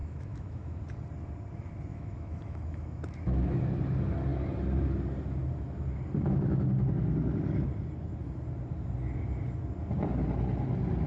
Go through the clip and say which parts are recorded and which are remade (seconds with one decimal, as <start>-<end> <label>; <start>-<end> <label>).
0.0-0.8 remade; 0.8-1.9 recorded; 1.9-3.6 remade; 3.6-11.1 recorded